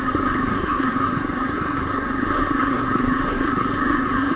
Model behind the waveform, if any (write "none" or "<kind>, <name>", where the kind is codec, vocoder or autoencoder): codec, SNAC